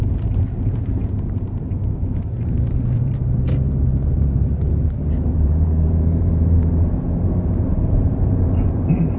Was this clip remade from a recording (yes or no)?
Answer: yes